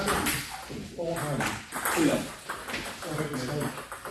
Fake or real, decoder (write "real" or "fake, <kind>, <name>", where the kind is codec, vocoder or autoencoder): real